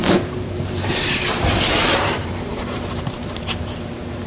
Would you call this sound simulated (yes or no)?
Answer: yes